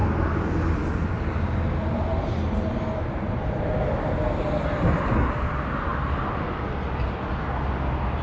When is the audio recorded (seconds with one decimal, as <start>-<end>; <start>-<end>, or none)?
0.0-8.2